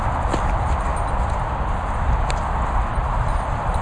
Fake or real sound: real